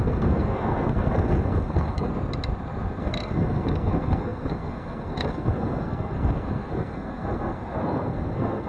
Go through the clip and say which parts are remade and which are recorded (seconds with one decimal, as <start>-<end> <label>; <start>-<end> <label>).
0.0-2.1 remade; 2.1-3.0 recorded; 3.0-8.7 remade